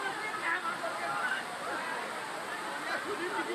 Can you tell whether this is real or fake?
real